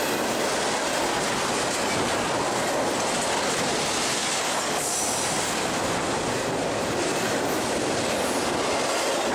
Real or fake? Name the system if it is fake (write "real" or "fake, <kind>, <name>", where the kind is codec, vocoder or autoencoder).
real